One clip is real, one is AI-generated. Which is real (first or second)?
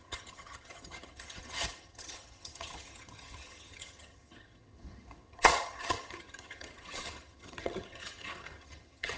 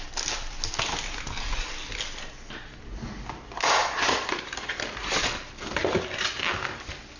second